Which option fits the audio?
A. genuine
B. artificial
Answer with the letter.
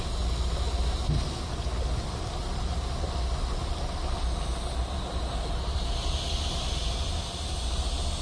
A